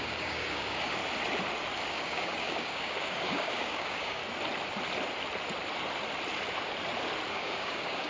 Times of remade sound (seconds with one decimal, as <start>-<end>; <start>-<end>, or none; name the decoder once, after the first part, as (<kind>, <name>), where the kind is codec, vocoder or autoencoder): 0.0-1.0 (codec, DAC); 1.9-4.2; 7.3-8.1